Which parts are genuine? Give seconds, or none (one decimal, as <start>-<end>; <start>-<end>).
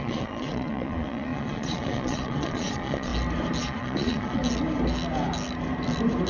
3.1-3.6; 4.4-6.3